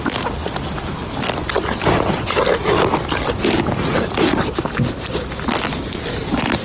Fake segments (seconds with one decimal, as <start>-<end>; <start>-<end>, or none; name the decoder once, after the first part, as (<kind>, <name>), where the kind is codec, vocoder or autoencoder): none